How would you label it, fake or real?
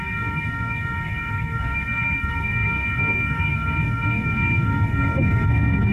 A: fake